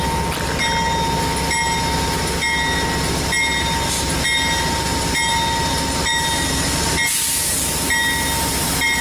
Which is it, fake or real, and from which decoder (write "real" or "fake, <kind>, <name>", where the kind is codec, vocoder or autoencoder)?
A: real